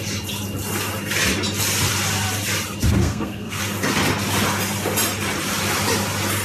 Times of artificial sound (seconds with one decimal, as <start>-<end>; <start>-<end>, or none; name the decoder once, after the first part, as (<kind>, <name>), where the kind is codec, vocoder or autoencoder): 3.0-3.6 (codec, SNAC)